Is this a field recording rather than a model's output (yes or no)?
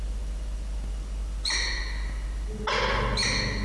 yes